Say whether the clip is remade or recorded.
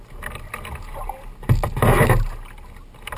recorded